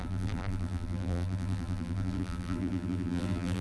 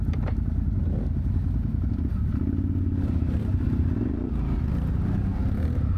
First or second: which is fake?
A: first